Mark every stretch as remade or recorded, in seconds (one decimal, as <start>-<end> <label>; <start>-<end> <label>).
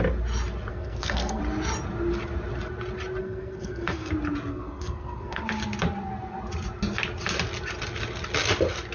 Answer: 0.0-0.7 recorded; 0.7-1.4 remade; 1.4-3.2 recorded; 3.2-4.1 remade; 4.1-4.5 recorded; 4.5-5.4 remade; 5.4-8.9 recorded